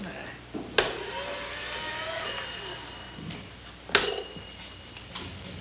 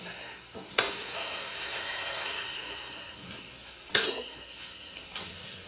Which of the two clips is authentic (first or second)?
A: first